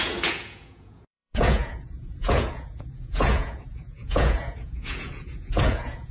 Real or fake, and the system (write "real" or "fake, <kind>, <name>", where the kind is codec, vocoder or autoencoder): fake, vocoder, Vocos